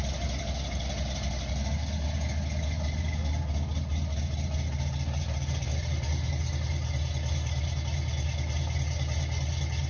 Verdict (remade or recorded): recorded